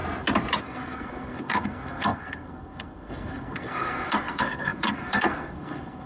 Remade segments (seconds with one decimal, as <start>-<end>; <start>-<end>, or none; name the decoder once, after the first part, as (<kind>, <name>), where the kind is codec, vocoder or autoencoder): 0.6-6.1 (codec, SNAC)